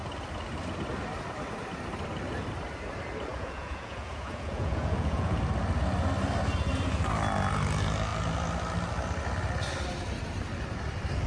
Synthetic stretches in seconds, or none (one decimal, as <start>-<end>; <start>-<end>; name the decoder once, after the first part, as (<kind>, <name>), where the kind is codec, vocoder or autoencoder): 3.3-5.4 (vocoder, Vocos)